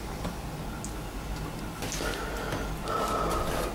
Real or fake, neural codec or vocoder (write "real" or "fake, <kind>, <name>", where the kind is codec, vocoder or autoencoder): real